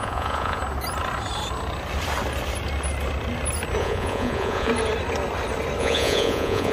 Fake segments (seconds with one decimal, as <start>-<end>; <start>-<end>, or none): 0.0-0.6; 3.8-4.7; 5.8-6.7